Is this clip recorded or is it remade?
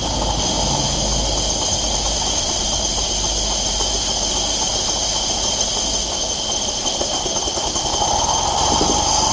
recorded